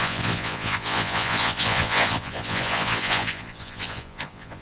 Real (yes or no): no